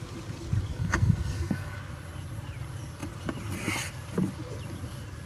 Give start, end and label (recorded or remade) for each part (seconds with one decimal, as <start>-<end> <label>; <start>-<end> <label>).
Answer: 0.0-0.7 recorded; 0.7-1.8 remade; 1.8-5.3 recorded